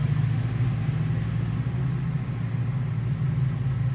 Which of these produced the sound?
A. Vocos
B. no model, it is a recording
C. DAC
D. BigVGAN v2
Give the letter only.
B